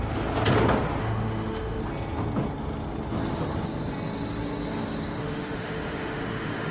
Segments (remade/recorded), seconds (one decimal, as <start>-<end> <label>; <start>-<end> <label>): 0.0-1.0 recorded; 1.0-1.8 remade; 1.8-5.2 recorded; 5.2-6.7 remade

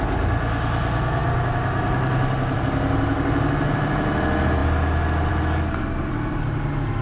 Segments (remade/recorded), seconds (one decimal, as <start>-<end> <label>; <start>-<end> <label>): 0.0-7.0 recorded